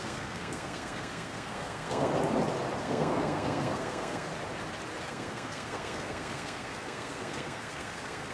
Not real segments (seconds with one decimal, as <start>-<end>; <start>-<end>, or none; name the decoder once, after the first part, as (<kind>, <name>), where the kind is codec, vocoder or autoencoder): 0.0-2.1 (codec, SNAC); 2.8-4.3; 5.0-8.3